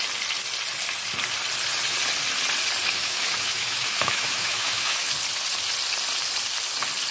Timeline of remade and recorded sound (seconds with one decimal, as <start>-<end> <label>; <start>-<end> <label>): 0.0-3.0 recorded; 3.0-5.1 remade; 5.1-7.1 recorded